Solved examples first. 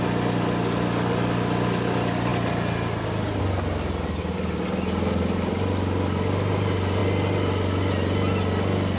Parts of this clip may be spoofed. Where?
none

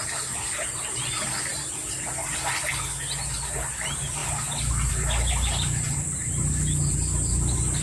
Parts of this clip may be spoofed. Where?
none

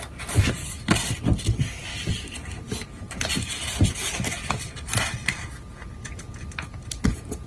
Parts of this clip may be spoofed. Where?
none

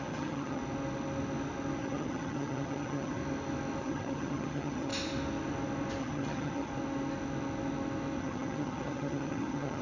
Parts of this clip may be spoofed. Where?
0.0-0.6 (vocoder, HiFi-GAN); 1.8-3.2; 3.8-4.9; 6.0-6.7; 8.2-9.8